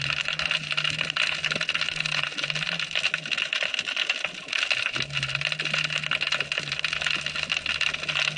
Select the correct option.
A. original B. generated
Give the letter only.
A